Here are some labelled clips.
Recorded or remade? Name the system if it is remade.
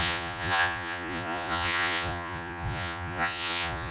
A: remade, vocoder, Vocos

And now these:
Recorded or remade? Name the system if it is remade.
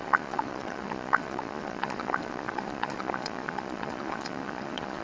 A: remade, vocoder, Vocos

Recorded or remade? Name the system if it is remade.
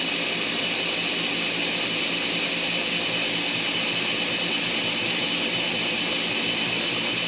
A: recorded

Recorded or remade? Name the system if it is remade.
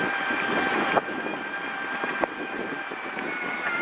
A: recorded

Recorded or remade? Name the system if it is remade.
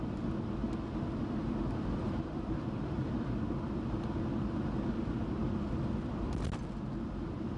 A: recorded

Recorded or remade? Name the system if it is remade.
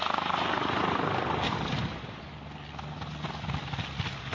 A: recorded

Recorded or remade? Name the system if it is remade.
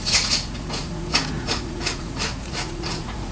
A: remade, vocoder, Vocos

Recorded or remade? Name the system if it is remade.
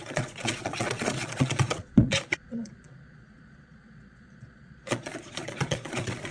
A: remade, vocoder, Vocos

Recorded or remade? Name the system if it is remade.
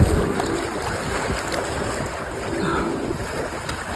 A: recorded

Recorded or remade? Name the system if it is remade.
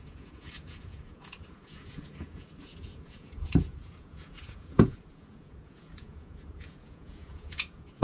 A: remade, vocoder, Vocos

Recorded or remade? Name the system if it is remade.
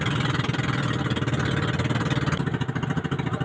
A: recorded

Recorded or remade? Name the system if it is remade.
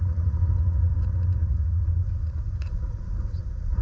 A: remade, vocoder, Vocos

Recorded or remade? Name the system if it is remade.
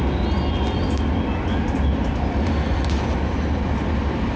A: recorded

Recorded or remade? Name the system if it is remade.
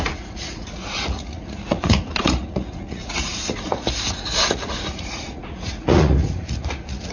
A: remade, vocoder, Vocos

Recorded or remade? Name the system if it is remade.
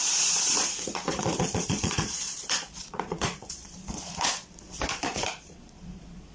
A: remade, vocoder, Vocos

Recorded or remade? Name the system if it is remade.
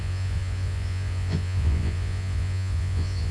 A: remade, vocoder, Vocos